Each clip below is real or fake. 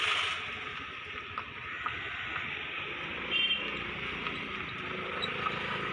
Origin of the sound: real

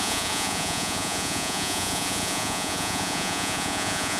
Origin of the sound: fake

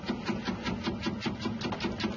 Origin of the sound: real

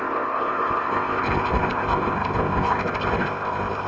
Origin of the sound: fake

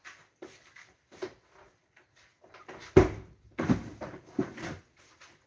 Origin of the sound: real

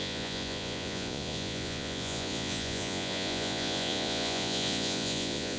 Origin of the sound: fake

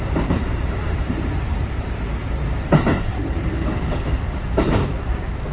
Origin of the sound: fake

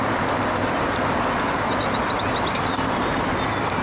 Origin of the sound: real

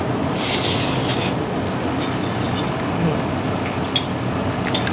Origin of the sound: real